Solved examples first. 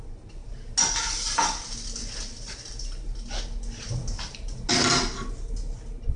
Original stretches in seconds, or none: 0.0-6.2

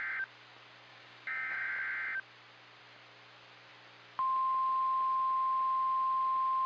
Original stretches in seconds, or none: 0.0-0.9; 1.7-6.7

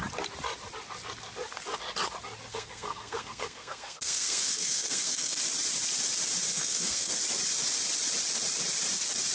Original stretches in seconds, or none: 0.0-2.5; 5.4-6.5; 7.2-9.3